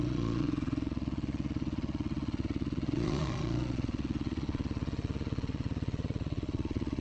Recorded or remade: remade